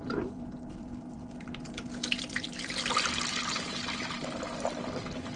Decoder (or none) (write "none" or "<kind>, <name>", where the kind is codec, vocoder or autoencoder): vocoder, BigVGAN v2